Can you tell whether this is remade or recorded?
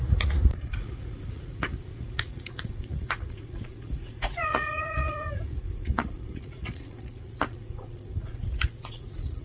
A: remade